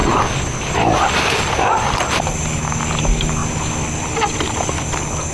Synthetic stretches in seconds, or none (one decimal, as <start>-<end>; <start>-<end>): none